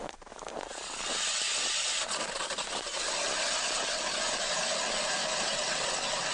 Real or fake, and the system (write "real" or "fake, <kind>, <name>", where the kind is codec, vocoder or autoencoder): real